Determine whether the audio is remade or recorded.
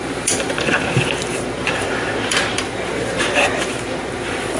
remade